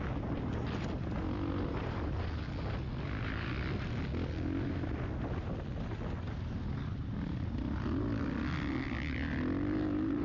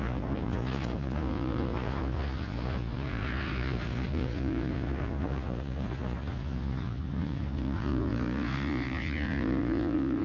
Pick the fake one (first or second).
second